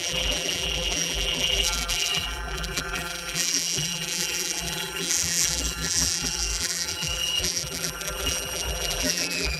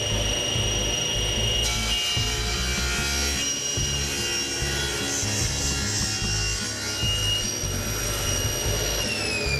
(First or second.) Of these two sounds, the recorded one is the second